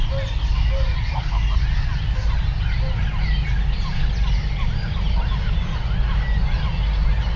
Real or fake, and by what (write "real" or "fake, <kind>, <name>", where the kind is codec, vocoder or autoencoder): real